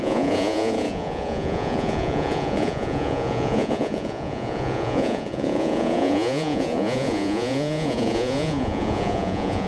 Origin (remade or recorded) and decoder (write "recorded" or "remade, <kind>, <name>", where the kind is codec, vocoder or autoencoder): remade, vocoder, Vocos